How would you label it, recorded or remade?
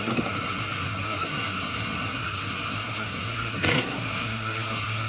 remade